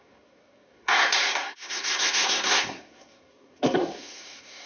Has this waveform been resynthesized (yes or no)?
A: yes